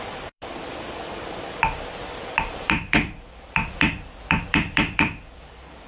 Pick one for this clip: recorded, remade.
remade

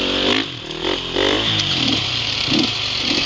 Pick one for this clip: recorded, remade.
remade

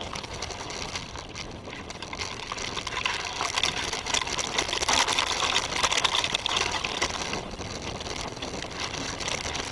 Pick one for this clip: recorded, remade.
recorded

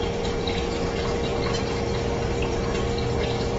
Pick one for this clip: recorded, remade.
recorded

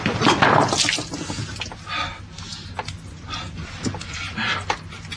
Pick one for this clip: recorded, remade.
recorded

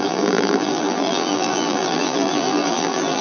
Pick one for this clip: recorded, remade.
remade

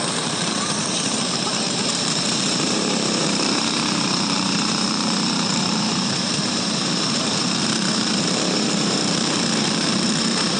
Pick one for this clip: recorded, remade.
remade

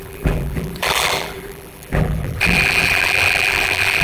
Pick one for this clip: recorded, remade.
remade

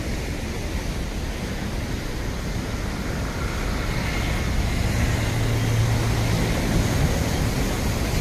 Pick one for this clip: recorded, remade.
recorded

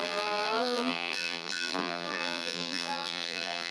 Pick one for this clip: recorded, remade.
remade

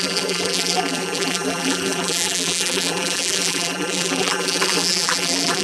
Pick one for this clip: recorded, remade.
remade